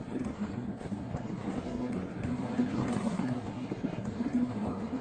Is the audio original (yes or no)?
no